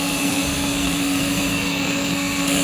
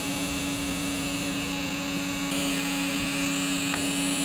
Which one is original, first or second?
second